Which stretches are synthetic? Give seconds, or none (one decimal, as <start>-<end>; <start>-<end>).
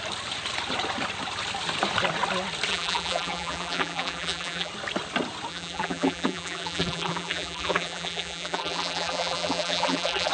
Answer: 2.7-4.7; 5.5-10.3